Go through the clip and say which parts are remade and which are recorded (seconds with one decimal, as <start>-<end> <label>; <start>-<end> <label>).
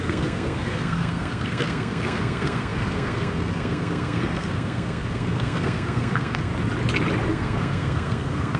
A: 0.0-6.5 remade; 6.5-7.3 recorded; 7.3-8.6 remade